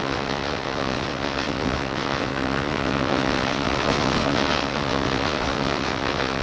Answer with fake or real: fake